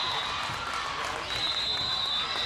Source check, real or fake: real